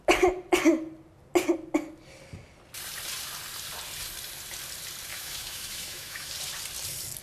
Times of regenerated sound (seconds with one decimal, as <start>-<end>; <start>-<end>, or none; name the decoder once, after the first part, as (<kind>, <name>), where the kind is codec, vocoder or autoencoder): 5.1-6.3 (autoencoder, DAC-VAE)

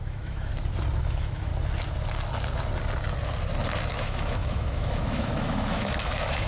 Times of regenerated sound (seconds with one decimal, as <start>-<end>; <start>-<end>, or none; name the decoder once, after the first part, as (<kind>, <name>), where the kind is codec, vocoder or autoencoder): 0.0-0.5 (autoencoder, DAC-VAE); 1.0-1.5; 4.0-6.5